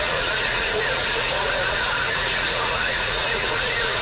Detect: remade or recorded remade